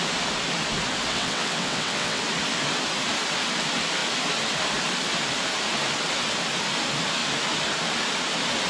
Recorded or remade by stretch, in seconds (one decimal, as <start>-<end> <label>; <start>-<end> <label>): 0.0-1.1 recorded; 1.1-2.2 remade; 2.2-8.7 recorded